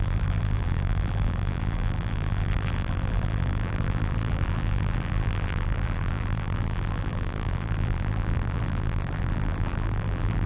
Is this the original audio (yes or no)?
no